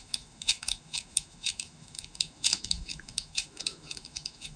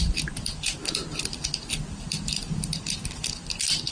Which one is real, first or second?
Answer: second